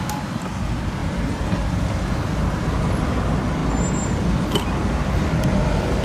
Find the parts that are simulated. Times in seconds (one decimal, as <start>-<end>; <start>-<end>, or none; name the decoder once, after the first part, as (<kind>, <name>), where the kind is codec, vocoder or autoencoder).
none